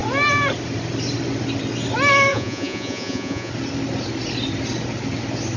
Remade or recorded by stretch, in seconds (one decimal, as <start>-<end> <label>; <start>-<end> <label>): 0.0-2.3 recorded; 2.3-3.5 remade; 3.5-5.6 recorded